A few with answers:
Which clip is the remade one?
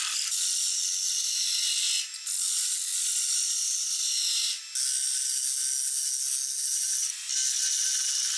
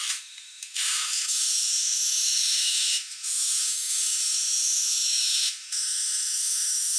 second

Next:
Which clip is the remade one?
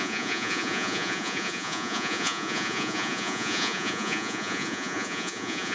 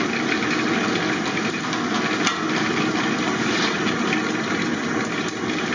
first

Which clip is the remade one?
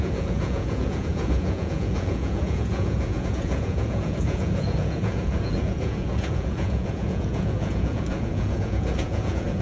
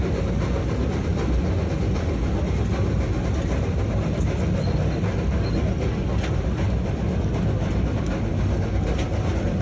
first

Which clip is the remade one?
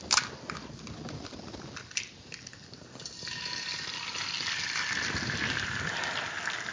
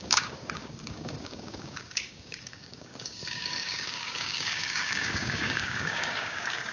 second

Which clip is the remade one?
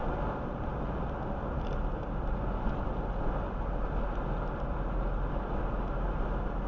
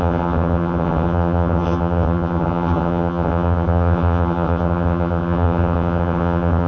second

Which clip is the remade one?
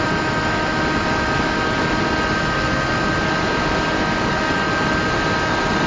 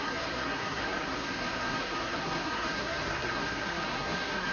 second